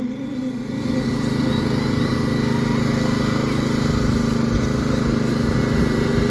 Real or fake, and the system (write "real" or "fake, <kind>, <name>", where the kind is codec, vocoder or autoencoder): real